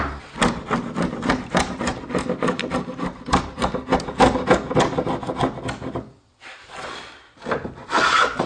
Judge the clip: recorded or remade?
recorded